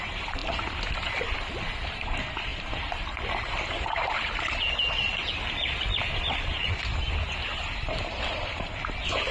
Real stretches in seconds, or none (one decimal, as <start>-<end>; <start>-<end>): 0.0-2.5; 4.7-9.3